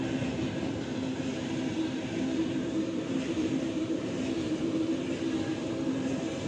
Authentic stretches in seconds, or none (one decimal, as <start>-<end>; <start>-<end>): 0.0-2.5; 5.0-6.5